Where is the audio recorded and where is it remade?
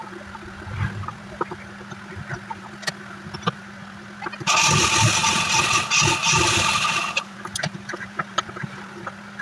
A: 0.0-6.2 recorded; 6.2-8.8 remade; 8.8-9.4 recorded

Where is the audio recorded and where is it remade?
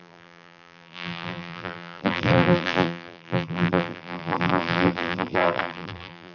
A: 0.0-6.3 remade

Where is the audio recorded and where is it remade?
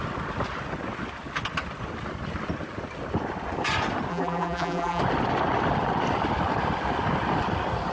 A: 0.0-4.1 recorded; 4.1-5.0 remade; 5.0-7.9 recorded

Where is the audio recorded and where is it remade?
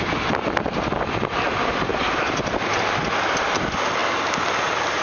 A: 0.0-1.9 recorded; 1.9-2.8 remade; 2.8-5.0 recorded